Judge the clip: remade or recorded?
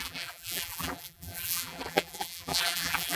remade